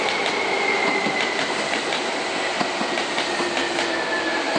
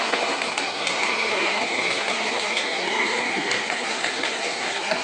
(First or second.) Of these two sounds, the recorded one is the first